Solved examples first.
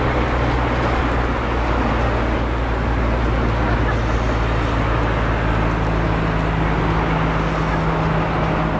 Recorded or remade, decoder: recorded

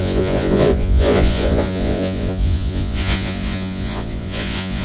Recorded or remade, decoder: remade, vocoder, Vocos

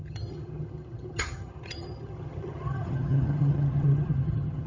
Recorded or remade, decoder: remade, vocoder, HiFi-GAN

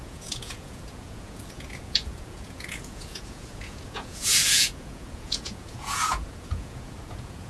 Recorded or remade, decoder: remade, vocoder, Vocos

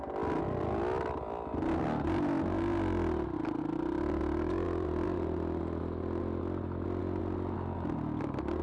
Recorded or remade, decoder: recorded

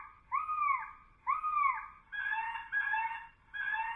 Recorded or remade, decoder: recorded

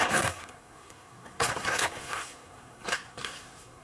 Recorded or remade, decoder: remade, codec, SNAC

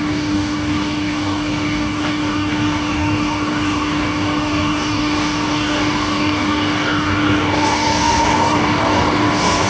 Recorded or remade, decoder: remade, codec, DAC